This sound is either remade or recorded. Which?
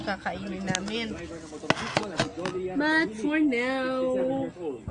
recorded